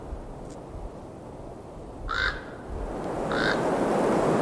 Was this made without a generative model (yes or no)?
yes